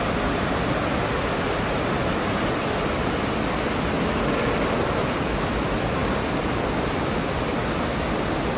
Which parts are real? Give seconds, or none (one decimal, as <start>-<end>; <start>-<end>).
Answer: 0.0-8.6